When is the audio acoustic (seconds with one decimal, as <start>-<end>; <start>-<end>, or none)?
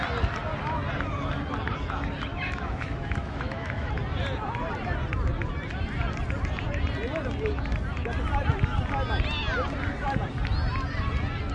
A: 0.0-2.3; 3.9-11.5